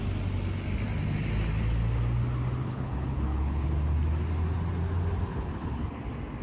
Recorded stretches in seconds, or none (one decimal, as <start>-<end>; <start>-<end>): 0.0-2.6; 3.7-5.3; 6.0-6.4